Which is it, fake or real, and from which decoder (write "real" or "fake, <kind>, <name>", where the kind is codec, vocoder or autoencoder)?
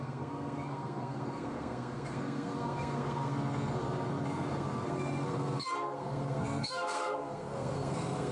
fake, codec, SNAC